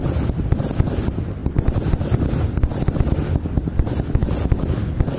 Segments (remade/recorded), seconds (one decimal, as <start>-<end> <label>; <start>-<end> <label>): 0.0-5.2 recorded